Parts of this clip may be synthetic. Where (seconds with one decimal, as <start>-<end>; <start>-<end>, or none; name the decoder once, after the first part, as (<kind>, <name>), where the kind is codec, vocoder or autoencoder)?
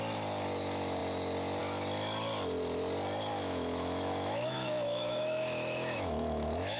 3.3-6.8 (autoencoder, DAC-VAE)